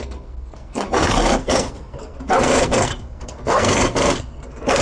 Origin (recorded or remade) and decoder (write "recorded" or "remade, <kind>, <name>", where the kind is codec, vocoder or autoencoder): remade, codec, SNAC